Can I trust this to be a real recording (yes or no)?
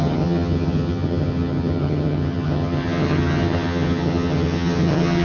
no